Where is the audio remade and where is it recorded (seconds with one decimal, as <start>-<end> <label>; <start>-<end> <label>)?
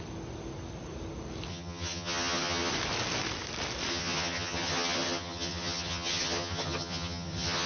0.0-1.5 recorded; 1.5-2.7 remade; 2.7-3.9 recorded; 3.9-7.7 remade